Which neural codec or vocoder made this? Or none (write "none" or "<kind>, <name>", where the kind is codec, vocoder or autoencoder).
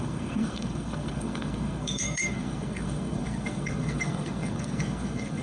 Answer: codec, SNAC